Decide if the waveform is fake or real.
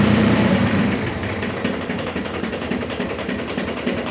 fake